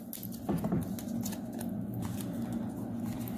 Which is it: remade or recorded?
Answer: recorded